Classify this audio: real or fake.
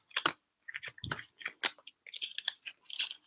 real